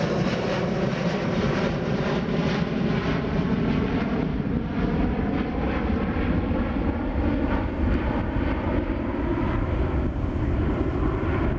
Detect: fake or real fake